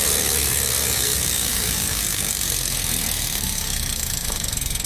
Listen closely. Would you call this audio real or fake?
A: fake